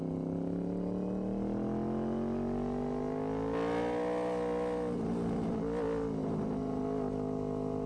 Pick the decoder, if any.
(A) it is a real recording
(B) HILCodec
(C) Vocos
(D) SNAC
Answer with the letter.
A